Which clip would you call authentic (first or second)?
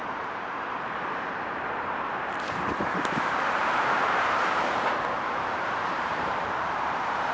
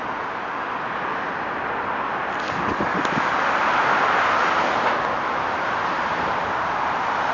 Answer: second